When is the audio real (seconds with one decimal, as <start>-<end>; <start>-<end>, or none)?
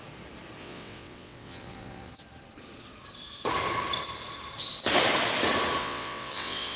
0.0-0.6; 2.1-5.8